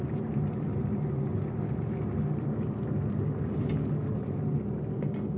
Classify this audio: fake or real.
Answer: real